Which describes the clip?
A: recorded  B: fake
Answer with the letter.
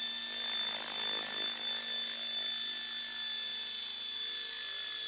A